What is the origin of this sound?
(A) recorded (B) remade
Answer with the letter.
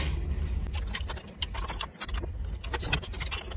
A